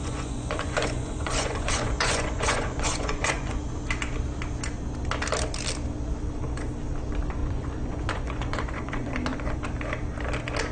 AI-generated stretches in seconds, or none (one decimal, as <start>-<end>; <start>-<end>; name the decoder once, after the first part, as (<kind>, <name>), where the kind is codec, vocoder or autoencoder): 0.0-3.6 (vocoder, Vocos); 7.4-9.1